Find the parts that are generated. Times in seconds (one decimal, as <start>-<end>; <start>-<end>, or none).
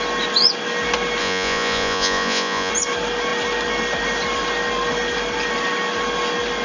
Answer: 1.2-2.7